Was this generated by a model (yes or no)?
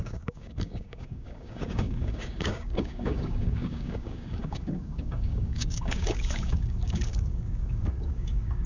yes